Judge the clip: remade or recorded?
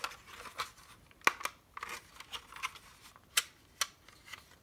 recorded